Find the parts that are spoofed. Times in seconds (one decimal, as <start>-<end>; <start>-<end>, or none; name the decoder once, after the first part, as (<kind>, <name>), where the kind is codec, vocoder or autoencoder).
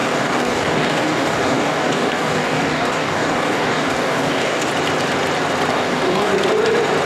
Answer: 0.0-4.7 (codec, DAC); 5.7-6.3